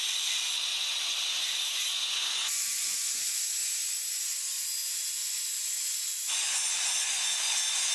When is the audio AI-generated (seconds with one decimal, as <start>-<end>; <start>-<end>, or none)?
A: 0.7-4.2; 5.2-7.9